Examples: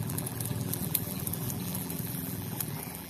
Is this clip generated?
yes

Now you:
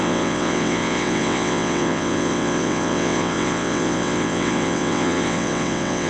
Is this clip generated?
yes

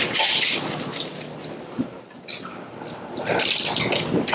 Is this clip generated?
no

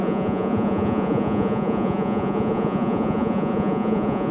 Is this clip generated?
yes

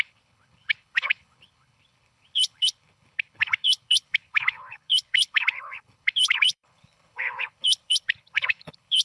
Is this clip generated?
yes